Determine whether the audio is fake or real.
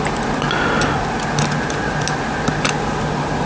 real